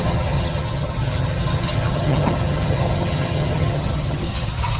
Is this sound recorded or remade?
remade